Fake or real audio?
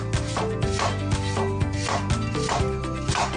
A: real